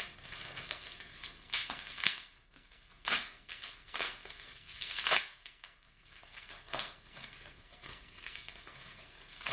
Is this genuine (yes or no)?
no